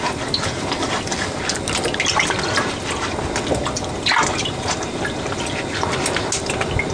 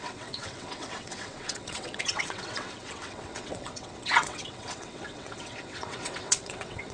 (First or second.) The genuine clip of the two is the first